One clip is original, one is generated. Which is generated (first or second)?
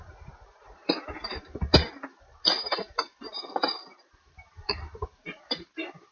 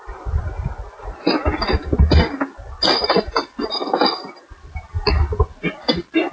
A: first